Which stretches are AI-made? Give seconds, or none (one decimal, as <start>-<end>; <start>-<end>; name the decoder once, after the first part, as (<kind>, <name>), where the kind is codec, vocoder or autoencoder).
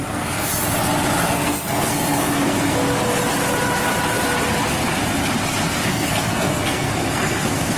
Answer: 0.0-0.5 (codec, SNAC); 1.2-2.8; 5.7-7.8